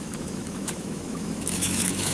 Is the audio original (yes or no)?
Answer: no